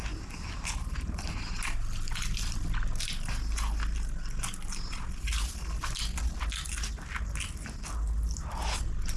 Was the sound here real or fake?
real